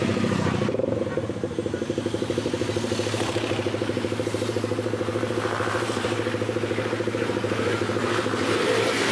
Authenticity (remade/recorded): remade